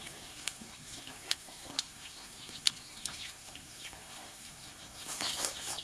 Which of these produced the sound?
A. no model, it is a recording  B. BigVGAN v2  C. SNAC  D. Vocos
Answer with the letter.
C